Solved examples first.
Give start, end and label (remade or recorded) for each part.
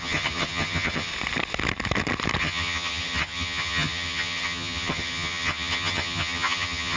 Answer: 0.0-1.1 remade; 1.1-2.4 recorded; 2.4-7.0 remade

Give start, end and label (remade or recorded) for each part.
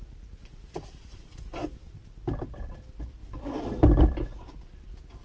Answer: 0.0-5.2 recorded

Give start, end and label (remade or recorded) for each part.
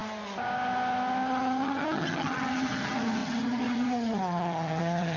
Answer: 0.0-1.3 recorded; 1.3-5.2 remade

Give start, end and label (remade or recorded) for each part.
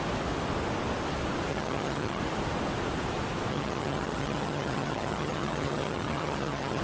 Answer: 0.0-1.5 recorded; 1.5-2.2 remade; 2.2-3.5 recorded; 3.5-6.8 remade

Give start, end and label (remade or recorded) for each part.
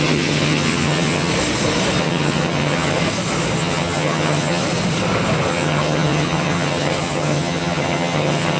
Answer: 0.0-1.3 remade; 1.3-2.0 recorded; 2.0-3.0 remade; 3.0-3.6 recorded; 3.6-4.6 remade; 4.6-5.5 recorded; 5.5-8.6 remade